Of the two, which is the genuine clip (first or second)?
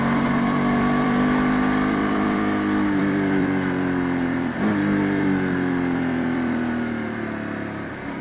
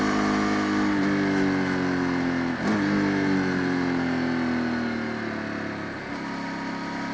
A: second